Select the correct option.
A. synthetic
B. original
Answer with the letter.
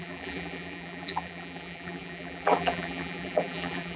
A